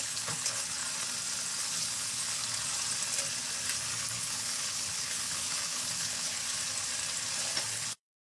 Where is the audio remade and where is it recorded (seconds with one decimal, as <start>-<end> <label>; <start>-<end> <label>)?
0.0-0.8 remade; 0.8-1.6 recorded; 1.6-2.4 remade; 2.4-4.2 recorded; 4.2-6.4 remade; 6.4-7.6 recorded; 7.6-8.4 remade